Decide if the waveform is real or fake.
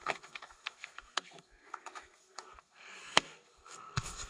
fake